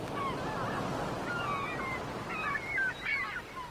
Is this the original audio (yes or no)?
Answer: yes